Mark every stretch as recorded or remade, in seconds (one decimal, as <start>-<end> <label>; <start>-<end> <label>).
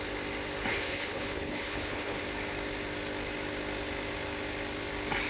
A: 0.0-0.7 recorded; 0.7-2.2 remade; 2.2-5.3 recorded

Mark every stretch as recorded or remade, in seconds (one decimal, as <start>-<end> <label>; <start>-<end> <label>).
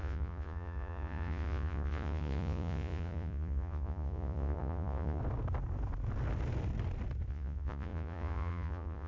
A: 0.0-5.2 remade; 5.2-7.3 recorded; 7.3-9.1 remade